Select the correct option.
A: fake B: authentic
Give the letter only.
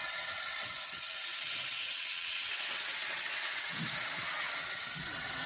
A